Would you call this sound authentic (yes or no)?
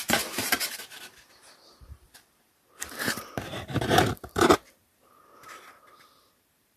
no